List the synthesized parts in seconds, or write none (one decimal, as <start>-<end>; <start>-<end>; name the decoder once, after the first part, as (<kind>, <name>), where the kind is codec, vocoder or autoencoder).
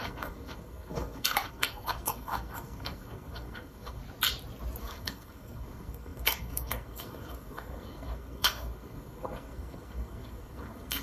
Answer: 0.0-4.0 (codec, SNAC); 4.8-11.0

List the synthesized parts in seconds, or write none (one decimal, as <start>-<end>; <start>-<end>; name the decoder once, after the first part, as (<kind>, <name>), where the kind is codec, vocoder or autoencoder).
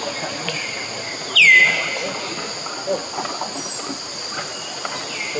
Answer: none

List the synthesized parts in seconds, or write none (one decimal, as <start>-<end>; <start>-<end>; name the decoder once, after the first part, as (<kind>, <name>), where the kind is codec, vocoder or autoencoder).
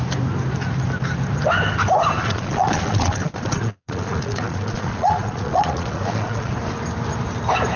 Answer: 2.2-6.5 (vocoder, Vocos)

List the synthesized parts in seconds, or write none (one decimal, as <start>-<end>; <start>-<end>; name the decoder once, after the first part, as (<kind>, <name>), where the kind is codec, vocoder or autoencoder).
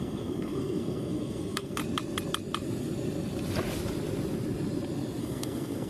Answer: 0.0-1.8 (codec, SNAC); 5.2-5.9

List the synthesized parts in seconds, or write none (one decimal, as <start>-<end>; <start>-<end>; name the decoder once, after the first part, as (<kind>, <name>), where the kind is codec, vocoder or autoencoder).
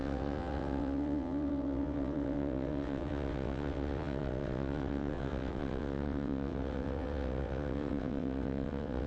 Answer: 0.0-9.1 (vocoder, WaveNeXt)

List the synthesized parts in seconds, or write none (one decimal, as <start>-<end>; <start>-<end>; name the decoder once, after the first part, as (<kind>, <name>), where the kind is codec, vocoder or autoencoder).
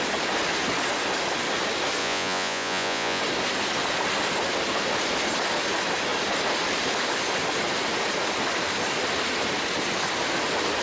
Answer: 2.0-3.2 (vocoder, Vocos)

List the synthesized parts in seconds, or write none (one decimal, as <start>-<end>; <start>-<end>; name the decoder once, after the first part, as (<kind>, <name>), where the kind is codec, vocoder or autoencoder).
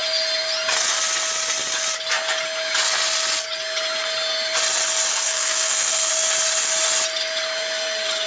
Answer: 5.1-6.1 (codec, SNAC)